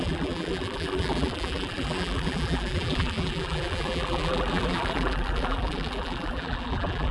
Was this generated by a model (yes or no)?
yes